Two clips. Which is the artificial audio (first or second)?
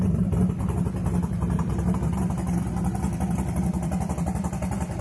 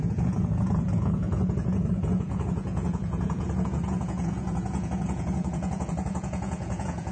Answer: second